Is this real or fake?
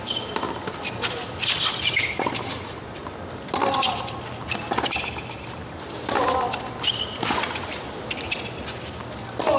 real